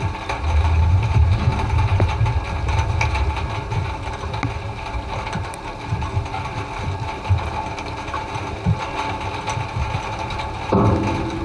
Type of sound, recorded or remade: recorded